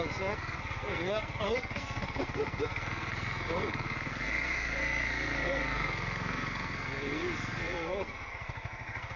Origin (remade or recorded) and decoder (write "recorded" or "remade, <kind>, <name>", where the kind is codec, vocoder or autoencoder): remade, codec, SNAC